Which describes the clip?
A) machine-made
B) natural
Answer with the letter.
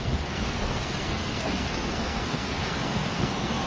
A